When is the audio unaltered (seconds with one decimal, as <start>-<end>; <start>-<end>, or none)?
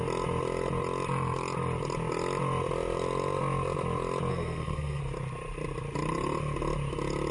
0.0-4.3; 5.0-7.3